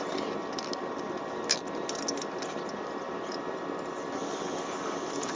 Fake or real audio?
real